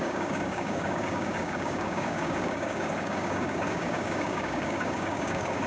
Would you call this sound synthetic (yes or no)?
yes